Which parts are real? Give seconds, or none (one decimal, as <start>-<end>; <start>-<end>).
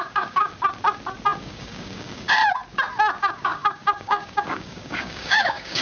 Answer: 0.5-1.4; 2.4-3.2